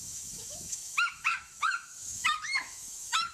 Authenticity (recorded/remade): remade